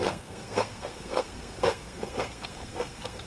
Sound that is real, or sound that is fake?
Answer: fake